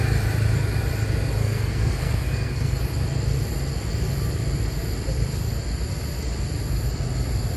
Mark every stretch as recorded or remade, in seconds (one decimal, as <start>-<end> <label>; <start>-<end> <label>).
0.0-1.4 recorded; 1.4-2.8 remade; 2.8-7.6 recorded